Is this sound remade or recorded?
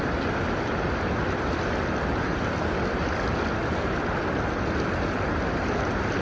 recorded